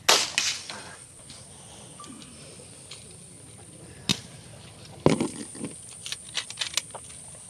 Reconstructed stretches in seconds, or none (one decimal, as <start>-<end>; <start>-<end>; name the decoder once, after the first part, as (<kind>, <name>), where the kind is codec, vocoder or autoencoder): none